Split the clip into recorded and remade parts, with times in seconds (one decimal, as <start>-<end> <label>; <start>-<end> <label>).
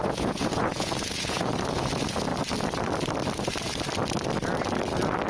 0.0-1.4 remade; 1.4-5.3 recorded